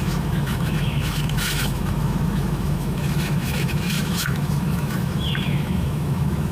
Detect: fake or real fake